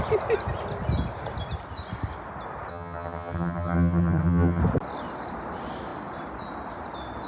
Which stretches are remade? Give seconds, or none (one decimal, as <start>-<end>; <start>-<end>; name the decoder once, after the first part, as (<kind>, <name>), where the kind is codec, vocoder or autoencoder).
2.7-4.6 (vocoder, HiFi-GAN)